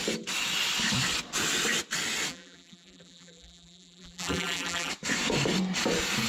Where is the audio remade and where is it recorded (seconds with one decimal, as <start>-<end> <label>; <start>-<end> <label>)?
0.0-2.3 recorded; 2.3-4.9 remade; 4.9-6.3 recorded